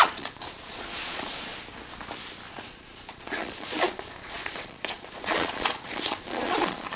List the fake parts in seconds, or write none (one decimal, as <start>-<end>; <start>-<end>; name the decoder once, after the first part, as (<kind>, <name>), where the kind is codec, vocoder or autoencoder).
0.0-1.5 (vocoder, Vocos); 2.5-7.0